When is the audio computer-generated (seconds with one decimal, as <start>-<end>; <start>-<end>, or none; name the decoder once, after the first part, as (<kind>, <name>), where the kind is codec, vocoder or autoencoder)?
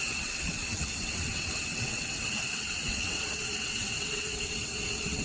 0.0-5.2 (vocoder, WaveNeXt)